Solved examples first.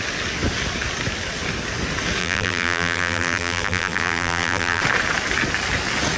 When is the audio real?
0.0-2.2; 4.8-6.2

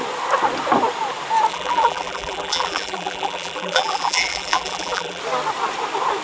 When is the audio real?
0.0-1.5; 5.2-6.2

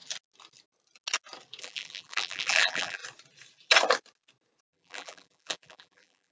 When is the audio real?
0.0-1.6; 3.0-4.7

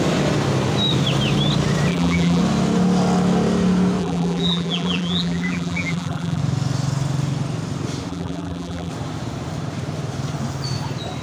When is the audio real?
0.0-1.9; 2.4-4.0; 6.4-8.1; 8.9-11.2

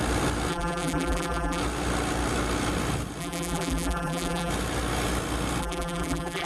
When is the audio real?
0.0-0.5; 1.6-3.2; 4.5-5.6

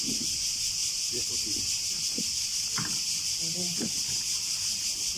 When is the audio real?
none